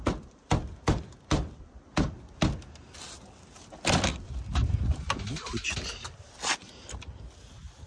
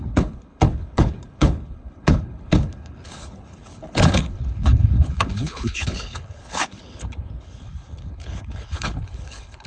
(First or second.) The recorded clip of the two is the first